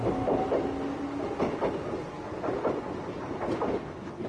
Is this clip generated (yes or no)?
no